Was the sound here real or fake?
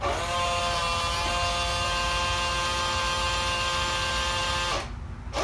real